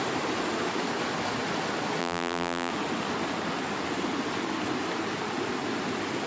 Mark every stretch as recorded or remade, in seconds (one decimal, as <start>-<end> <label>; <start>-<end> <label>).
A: 0.0-2.0 recorded; 2.0-2.7 remade; 2.7-6.3 recorded